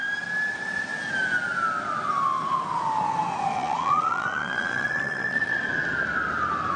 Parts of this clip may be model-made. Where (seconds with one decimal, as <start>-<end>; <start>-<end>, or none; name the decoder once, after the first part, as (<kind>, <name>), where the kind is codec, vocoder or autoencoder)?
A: 3.5-5.6 (vocoder, Vocos)